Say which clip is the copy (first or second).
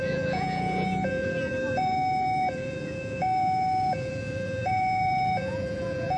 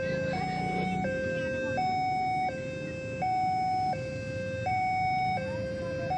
first